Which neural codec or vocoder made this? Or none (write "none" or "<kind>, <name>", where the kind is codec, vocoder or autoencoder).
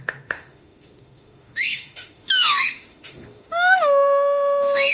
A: autoencoder, DAC-VAE